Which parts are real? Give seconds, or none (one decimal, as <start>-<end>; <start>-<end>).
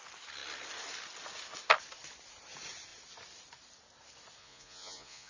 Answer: 0.0-4.4